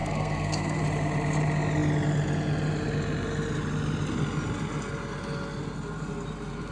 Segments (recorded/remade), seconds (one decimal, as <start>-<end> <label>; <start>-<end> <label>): 0.0-0.8 remade; 0.8-6.7 recorded